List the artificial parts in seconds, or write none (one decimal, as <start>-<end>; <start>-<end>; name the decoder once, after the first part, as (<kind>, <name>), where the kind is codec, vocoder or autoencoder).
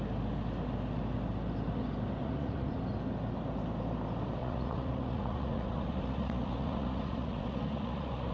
2.2-2.7 (vocoder, Vocos); 4.4-8.3